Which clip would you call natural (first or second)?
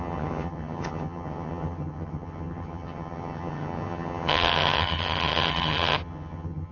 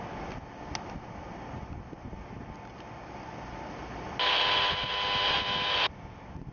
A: second